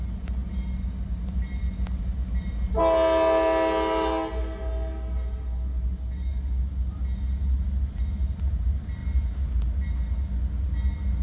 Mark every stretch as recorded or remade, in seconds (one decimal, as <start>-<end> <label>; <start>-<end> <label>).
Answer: 0.0-11.2 recorded

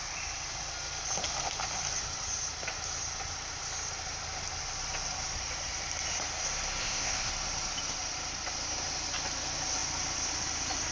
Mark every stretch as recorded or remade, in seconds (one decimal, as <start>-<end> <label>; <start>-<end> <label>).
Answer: 0.0-6.8 recorded; 6.8-7.3 remade; 7.3-10.9 recorded

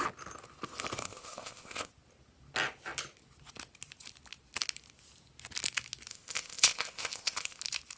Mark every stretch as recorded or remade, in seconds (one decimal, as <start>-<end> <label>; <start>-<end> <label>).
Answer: 0.0-1.0 recorded; 1.0-1.9 remade; 1.9-6.1 recorded; 6.1-7.6 remade; 7.6-8.0 recorded

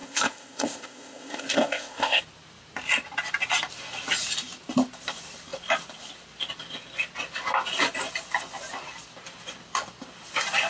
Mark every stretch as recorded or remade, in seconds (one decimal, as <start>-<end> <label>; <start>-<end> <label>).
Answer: 0.0-2.2 remade; 2.2-10.7 recorded

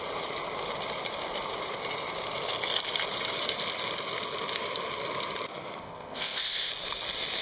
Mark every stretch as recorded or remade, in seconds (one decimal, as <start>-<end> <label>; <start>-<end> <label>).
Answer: 0.0-5.8 recorded; 5.8-6.7 remade; 6.7-7.4 recorded

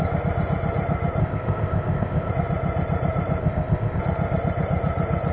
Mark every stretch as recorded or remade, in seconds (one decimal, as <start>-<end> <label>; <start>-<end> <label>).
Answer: 0.0-1.2 recorded; 1.2-2.3 remade; 2.3-3.4 recorded; 3.4-4.0 remade; 4.0-5.3 recorded